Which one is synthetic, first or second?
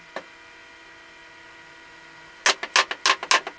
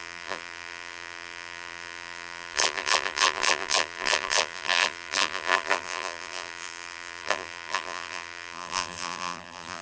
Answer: second